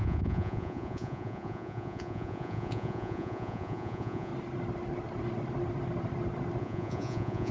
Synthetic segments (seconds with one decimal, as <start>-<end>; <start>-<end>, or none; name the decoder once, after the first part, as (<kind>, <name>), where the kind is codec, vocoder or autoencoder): 0.0-4.3 (vocoder, Vocos); 6.6-7.5